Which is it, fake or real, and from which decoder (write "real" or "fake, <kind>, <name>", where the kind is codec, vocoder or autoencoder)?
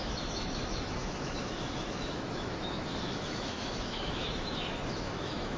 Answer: fake, autoencoder, DAC-VAE